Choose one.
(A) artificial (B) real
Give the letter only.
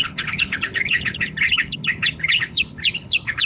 A